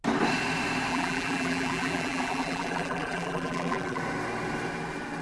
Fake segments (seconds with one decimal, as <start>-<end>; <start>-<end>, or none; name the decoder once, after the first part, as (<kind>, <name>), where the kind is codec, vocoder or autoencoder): 0.9-4.0 (vocoder, BigVGAN v2)